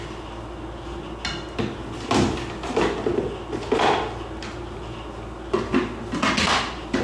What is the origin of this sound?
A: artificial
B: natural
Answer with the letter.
B